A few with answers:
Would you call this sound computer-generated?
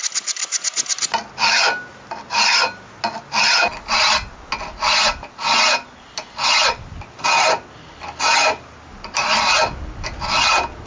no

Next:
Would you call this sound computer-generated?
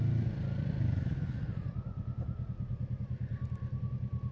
no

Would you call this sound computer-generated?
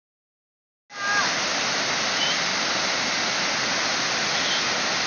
no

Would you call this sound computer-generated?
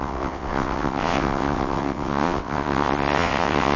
yes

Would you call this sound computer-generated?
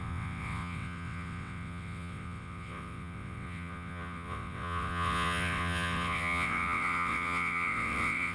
yes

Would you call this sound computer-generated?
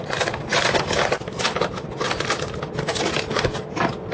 no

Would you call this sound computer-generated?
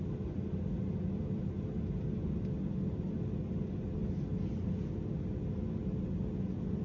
no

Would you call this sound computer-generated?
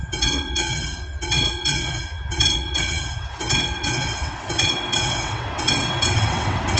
yes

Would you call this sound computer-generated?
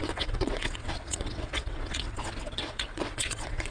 yes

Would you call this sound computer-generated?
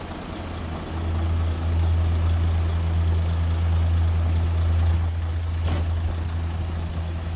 no